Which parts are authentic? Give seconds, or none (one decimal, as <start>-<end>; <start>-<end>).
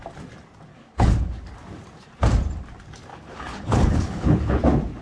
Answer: 0.0-0.7; 1.3-3.1; 4.6-5.0